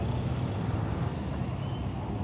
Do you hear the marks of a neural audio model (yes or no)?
no